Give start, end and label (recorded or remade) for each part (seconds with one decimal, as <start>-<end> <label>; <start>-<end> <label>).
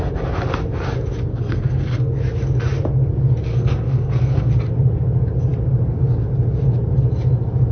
0.0-1.3 recorded; 1.3-2.1 remade; 2.1-3.5 recorded; 3.5-4.5 remade; 4.5-7.7 recorded